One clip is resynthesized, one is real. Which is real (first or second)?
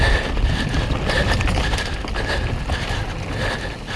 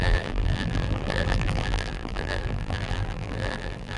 first